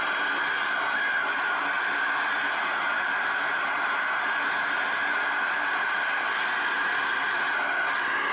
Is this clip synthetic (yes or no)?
no